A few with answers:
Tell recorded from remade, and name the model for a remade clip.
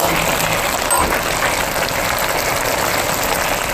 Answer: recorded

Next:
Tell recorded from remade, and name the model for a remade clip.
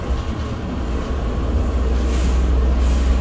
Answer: recorded